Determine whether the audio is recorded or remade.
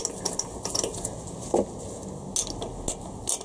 recorded